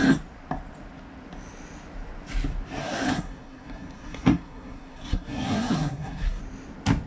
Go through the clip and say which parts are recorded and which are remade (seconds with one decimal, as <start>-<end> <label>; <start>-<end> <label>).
0.0-2.8 recorded; 2.8-6.4 remade; 6.4-7.1 recorded